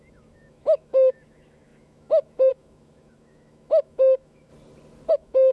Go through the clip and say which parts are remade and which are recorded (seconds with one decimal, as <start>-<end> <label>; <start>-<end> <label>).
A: 0.0-4.5 remade; 4.5-5.1 recorded; 5.1-5.5 remade